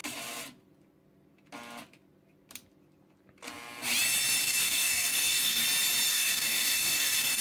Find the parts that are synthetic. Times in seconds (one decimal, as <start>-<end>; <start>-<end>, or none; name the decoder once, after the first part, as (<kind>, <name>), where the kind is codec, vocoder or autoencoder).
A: 4.4-5.6 (codec, DAC); 6.1-7.4